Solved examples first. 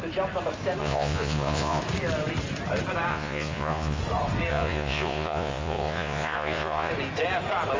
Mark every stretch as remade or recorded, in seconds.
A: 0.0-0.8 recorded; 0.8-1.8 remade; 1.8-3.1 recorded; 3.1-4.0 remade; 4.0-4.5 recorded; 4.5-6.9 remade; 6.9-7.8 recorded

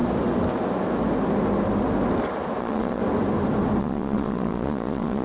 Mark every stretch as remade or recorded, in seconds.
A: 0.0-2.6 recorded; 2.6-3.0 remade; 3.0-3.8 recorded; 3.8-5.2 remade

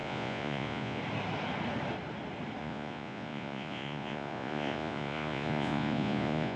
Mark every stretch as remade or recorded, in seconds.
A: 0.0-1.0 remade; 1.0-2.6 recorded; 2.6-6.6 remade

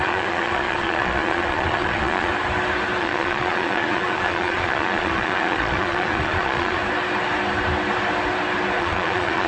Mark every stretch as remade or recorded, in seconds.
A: 0.0-2.3 remade; 2.3-3.0 recorded; 3.0-6.8 remade; 6.8-8.8 recorded; 8.8-9.5 remade

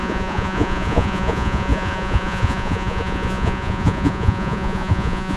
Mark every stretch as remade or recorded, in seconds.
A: 0.0-5.4 remade